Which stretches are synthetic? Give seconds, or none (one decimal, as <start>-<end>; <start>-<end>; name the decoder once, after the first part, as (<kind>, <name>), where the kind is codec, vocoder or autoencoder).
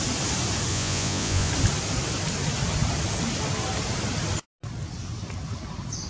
0.7-1.5 (vocoder, Vocos)